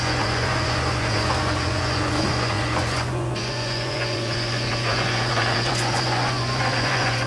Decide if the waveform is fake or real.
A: fake